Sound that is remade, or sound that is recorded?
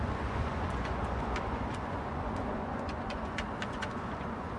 remade